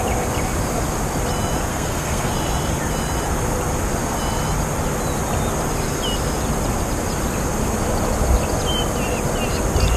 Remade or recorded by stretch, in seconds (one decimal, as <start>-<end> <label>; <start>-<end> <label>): 0.0-1.7 recorded; 1.7-2.3 remade; 2.3-10.0 recorded